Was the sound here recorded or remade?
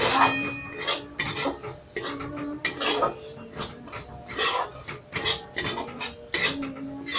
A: recorded